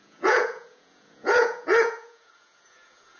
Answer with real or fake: fake